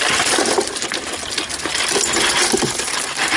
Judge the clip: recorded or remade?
recorded